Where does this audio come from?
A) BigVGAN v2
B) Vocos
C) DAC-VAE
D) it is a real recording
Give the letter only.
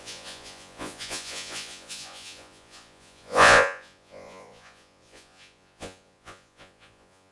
B